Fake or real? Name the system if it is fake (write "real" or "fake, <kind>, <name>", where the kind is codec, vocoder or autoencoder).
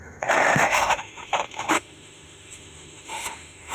fake, autoencoder, DAC-VAE